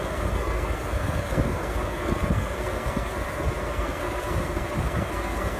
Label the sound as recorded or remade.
remade